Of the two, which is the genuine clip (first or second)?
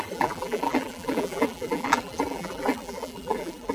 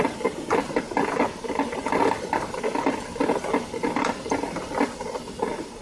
second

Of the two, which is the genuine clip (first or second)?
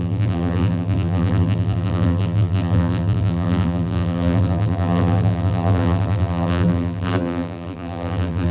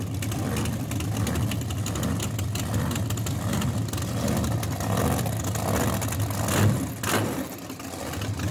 second